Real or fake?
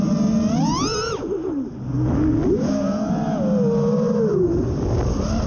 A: real